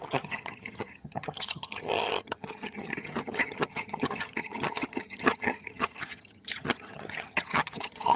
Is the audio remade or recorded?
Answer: remade